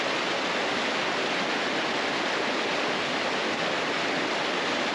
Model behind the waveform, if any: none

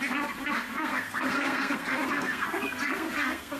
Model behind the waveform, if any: codec, SNAC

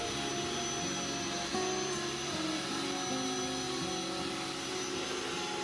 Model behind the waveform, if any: none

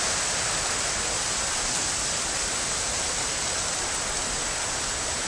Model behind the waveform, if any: none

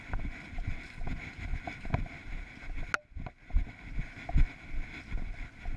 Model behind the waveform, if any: none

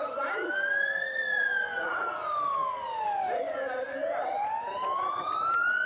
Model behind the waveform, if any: none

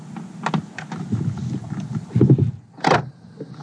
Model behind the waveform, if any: none